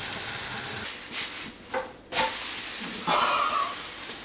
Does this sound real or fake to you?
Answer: real